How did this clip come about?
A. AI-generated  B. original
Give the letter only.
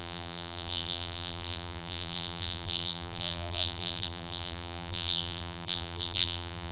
A